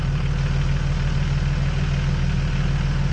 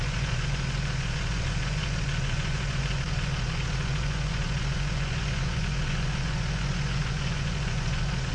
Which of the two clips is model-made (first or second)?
second